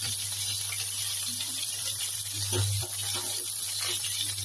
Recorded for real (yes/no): no